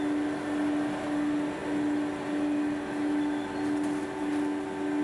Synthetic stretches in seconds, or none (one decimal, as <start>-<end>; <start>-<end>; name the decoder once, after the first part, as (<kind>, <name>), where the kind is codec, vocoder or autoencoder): none